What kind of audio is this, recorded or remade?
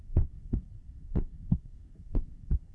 remade